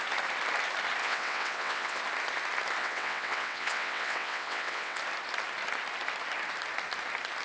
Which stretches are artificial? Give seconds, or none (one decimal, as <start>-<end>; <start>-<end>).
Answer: 1.0-2.0; 2.8-5.0